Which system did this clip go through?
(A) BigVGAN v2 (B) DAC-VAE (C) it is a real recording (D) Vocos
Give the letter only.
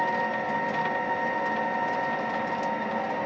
C